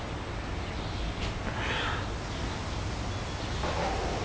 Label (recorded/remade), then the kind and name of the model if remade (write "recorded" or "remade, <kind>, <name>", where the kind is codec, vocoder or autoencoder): recorded